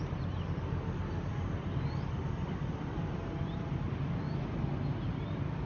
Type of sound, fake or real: real